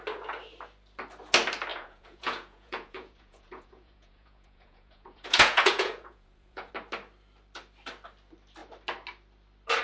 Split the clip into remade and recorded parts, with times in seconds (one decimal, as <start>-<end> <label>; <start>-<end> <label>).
0.0-1.7 recorded; 1.7-6.7 remade; 6.7-9.8 recorded